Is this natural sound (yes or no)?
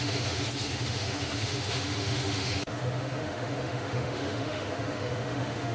no